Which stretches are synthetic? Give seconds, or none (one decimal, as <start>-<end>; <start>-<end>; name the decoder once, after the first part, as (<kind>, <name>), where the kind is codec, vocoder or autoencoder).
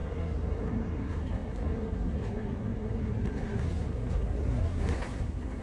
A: 0.0-5.6 (codec, SNAC)